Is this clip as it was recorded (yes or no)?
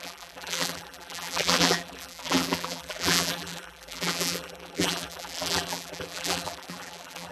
no